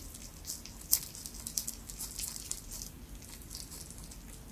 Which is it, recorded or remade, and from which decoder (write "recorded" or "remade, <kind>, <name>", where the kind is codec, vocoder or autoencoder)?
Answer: recorded